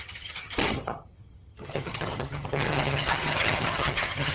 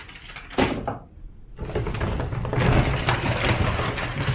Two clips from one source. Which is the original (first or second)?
second